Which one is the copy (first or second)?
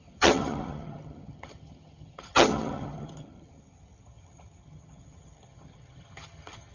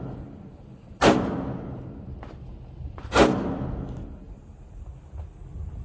first